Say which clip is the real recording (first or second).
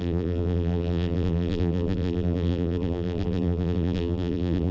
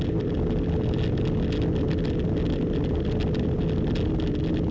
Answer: second